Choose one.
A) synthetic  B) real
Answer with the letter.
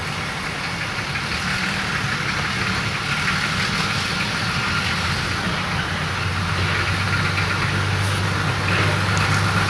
B